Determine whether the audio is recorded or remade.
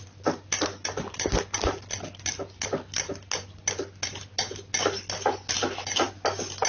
recorded